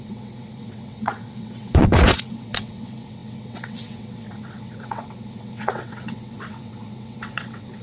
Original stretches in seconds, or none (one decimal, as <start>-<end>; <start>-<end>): none